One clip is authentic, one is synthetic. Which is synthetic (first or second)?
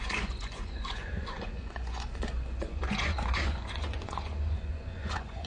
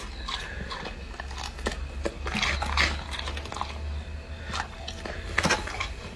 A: first